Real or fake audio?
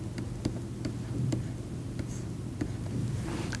real